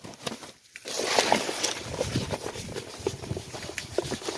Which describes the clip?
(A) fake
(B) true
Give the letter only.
B